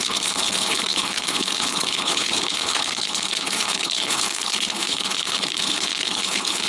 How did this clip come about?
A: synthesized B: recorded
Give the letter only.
A